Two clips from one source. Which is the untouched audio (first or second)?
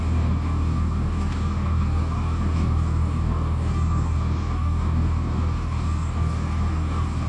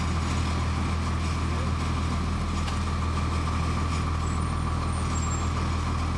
second